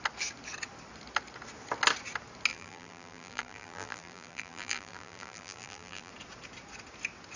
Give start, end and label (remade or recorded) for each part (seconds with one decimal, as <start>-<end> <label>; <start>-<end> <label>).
0.0-2.5 recorded; 2.5-6.1 remade; 6.1-7.4 recorded